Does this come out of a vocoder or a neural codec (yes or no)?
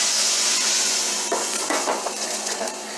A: yes